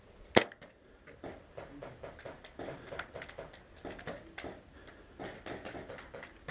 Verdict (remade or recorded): recorded